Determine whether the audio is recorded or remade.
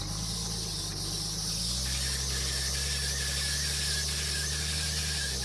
recorded